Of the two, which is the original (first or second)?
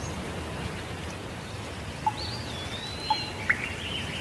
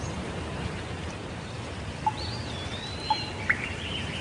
first